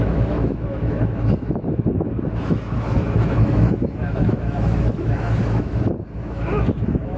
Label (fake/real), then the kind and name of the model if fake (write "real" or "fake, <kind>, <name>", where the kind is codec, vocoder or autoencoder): fake, autoencoder, DAC-VAE